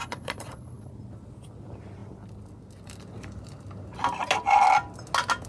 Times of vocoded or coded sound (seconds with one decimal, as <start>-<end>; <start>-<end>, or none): 0.0-0.9